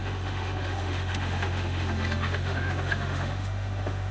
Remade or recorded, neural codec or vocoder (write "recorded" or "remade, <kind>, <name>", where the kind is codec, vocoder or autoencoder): remade, autoencoder, DAC-VAE